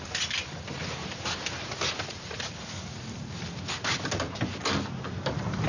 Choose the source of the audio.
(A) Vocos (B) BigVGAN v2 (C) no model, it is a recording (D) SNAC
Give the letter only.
C